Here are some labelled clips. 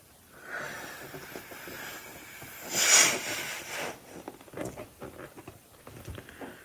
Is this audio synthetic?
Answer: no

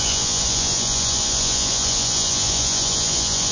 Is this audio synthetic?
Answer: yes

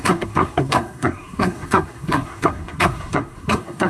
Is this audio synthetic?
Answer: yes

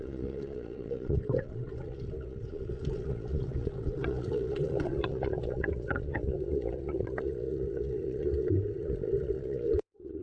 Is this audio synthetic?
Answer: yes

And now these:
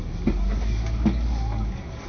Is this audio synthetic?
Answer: yes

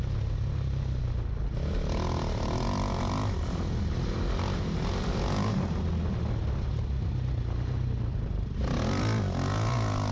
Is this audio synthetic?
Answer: no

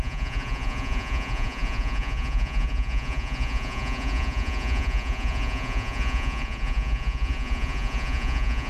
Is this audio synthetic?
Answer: yes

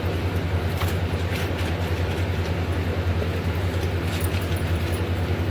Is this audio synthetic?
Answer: no